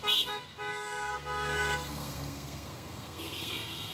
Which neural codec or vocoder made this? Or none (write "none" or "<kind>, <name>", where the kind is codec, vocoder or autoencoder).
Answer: codec, SNAC